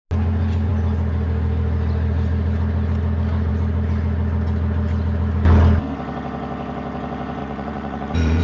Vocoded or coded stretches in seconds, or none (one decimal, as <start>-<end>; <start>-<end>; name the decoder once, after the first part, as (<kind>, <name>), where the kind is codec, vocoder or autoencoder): 7.4-8.4 (vocoder, Vocos)